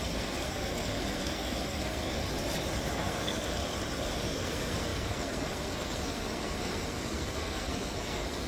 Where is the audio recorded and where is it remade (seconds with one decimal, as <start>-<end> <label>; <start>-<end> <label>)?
0.0-2.2 remade; 2.2-2.9 recorded; 2.9-3.6 remade; 3.6-4.1 recorded; 4.1-8.5 remade